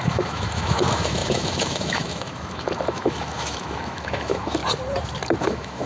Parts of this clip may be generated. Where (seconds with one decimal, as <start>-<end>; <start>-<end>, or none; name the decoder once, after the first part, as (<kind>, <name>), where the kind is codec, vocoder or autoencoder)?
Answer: 0.0-4.6 (autoencoder, DAC-VAE); 5.4-5.9